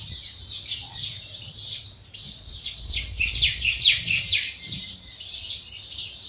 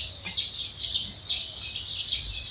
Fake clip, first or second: first